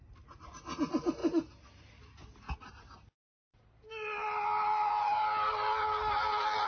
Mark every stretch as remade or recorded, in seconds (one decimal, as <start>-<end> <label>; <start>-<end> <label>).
0.0-6.7 recorded